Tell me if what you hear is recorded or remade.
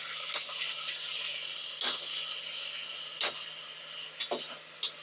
recorded